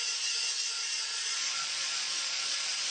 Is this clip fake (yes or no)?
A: yes